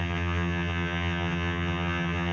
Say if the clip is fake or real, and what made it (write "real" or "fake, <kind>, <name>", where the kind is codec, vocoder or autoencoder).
fake, vocoder, HiFi-GAN